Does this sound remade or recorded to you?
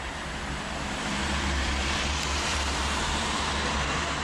remade